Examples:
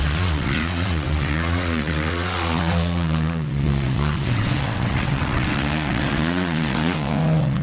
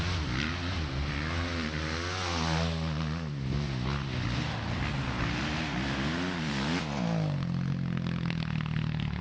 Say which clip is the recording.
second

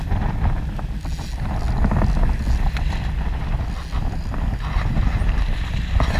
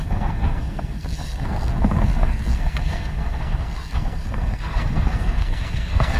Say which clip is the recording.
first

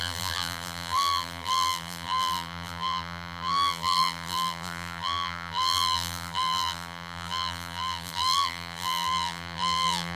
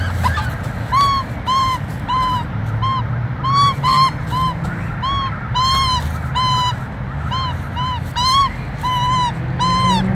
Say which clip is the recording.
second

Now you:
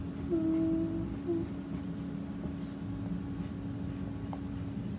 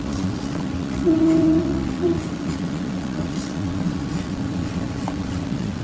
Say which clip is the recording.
first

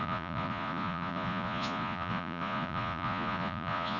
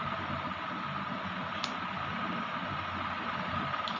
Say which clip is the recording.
second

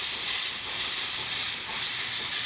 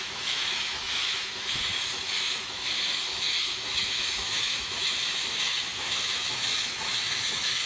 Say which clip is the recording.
first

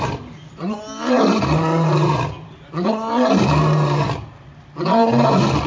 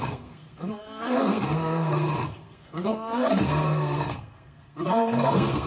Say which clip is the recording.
first